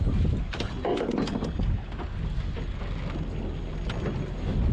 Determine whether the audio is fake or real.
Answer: real